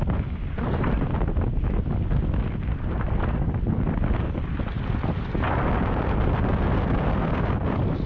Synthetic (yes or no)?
no